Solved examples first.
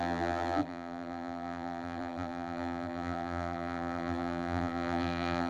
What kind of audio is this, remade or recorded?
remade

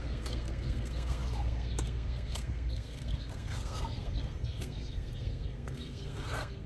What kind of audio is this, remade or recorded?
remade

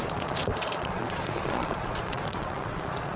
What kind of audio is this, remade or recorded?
remade